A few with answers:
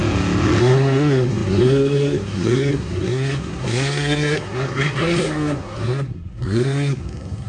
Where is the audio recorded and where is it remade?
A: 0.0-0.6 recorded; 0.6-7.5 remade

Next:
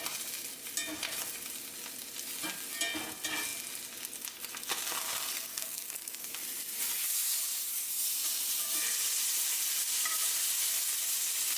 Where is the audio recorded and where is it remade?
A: 0.0-5.5 recorded; 5.5-6.3 remade; 6.3-11.6 recorded

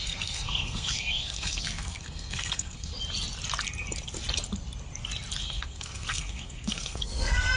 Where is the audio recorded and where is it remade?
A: 0.0-2.9 remade; 2.9-5.4 recorded; 5.4-7.6 remade

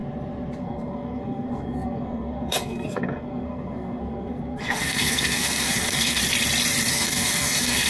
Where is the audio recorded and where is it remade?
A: 0.0-0.6 recorded; 0.6-6.2 remade; 6.2-6.9 recorded; 6.9-7.9 remade

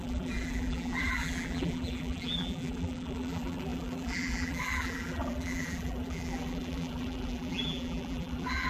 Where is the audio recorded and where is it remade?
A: 0.0-8.7 remade

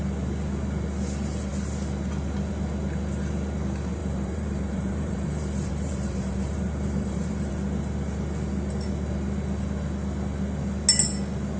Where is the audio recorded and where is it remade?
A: 0.0-4.0 recorded; 4.0-7.5 remade; 7.5-11.6 recorded

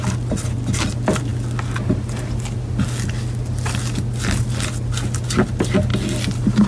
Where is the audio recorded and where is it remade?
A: 0.0-6.7 recorded

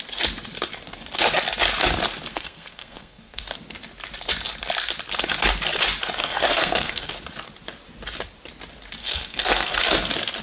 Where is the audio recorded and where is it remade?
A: 0.0-2.3 recorded; 2.3-3.4 remade; 3.4-6.2 recorded; 6.2-7.1 remade; 7.1-9.0 recorded; 9.0-9.8 remade; 9.8-10.4 recorded